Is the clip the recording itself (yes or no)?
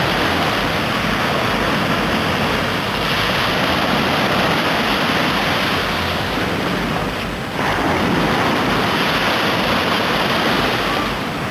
yes